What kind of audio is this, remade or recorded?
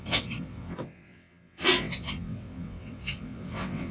remade